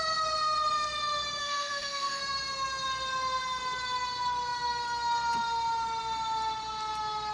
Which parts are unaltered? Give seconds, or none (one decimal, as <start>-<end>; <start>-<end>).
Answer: 0.0-1.4; 2.2-7.3